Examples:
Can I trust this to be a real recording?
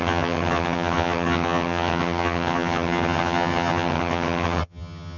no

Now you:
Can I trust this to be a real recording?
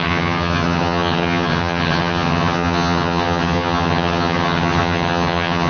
no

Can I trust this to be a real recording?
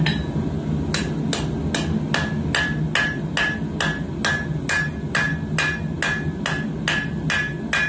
yes